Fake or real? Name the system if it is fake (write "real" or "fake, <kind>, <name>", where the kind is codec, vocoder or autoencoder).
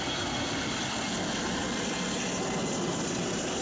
real